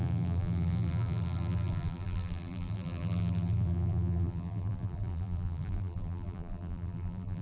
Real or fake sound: fake